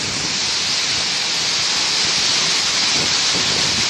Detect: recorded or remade recorded